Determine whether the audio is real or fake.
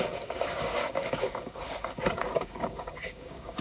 fake